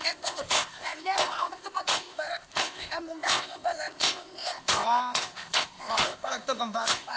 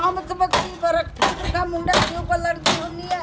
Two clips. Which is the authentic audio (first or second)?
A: second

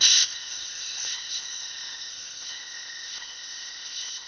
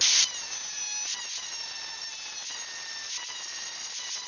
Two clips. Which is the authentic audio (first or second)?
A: second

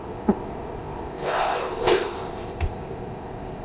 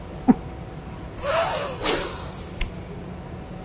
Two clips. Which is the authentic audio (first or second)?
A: second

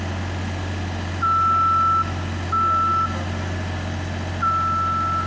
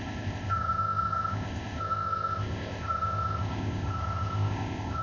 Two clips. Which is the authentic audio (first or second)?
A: first